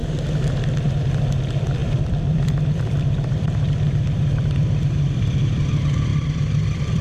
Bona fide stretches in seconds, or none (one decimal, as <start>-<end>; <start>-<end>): 0.0-1.8; 5.4-6.1